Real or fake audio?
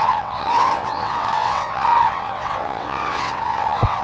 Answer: fake